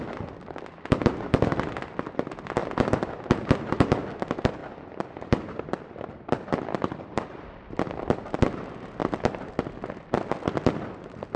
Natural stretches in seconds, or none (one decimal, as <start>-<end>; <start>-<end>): 0.0-2.6; 3.2-4.6; 8.3-11.4